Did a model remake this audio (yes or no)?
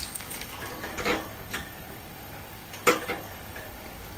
yes